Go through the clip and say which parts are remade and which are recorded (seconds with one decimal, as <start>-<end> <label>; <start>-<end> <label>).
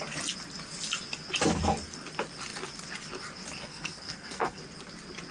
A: 0.0-3.6 recorded; 3.6-4.6 remade; 4.6-5.3 recorded